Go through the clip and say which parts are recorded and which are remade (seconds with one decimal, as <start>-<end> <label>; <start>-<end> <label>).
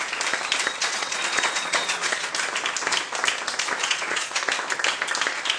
0.0-0.8 recorded; 0.8-2.3 remade; 2.3-3.8 recorded; 3.8-4.4 remade; 4.4-5.6 recorded